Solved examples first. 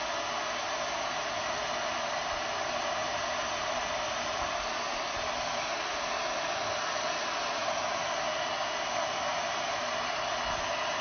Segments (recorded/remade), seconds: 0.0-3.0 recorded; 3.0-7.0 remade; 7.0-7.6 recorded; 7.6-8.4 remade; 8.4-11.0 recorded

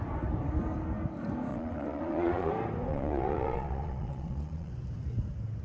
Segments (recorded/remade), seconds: 0.0-1.5 recorded; 1.5-2.5 remade; 2.5-2.9 recorded; 2.9-4.7 remade; 4.7-5.6 recorded

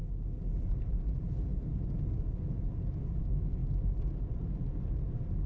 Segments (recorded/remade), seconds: 0.0-5.5 recorded

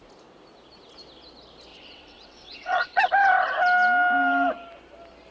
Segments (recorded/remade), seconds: 0.0-1.7 recorded; 1.7-3.0 remade; 3.0-5.3 recorded

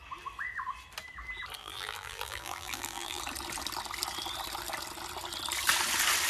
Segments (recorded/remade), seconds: 0.0-1.6 recorded; 1.6-3.2 remade; 3.2-6.3 recorded